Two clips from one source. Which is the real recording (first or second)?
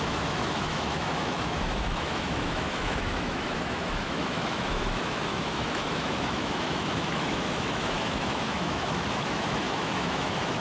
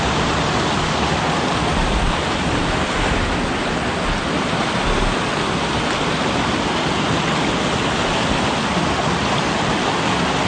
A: second